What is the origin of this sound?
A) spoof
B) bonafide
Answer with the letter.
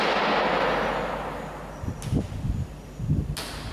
B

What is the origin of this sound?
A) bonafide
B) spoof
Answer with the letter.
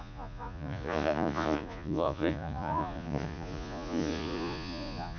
B